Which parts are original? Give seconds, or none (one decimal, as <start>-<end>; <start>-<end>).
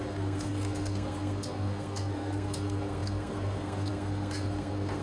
none